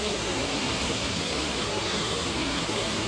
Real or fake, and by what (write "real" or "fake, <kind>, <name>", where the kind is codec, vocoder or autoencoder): fake, codec, SNAC